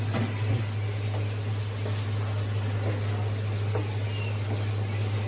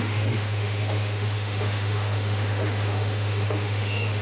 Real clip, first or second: first